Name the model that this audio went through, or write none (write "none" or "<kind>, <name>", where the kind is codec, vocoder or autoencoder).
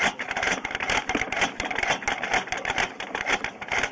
none